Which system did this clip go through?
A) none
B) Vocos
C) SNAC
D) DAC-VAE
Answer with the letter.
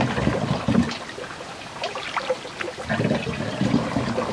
A